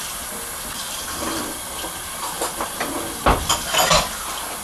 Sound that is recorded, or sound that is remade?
remade